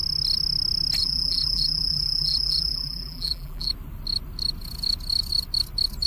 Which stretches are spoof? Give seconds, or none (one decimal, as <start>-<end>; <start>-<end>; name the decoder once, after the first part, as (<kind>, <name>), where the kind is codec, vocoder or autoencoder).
1.0-3.7 (vocoder, BigVGAN v2)